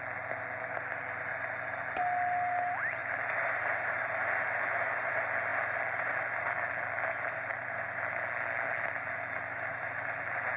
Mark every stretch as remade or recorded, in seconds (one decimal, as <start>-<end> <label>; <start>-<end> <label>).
0.0-10.6 recorded